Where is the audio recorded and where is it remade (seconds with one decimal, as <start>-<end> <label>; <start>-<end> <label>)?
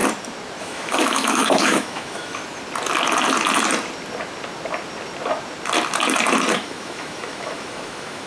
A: 0.0-0.6 recorded; 0.6-2.4 remade; 2.4-6.5 recorded; 6.5-8.3 remade